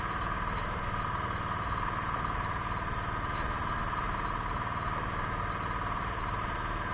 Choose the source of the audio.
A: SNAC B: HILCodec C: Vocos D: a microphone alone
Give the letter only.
D